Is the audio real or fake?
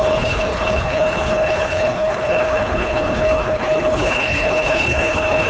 fake